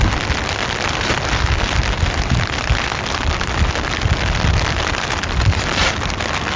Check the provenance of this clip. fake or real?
real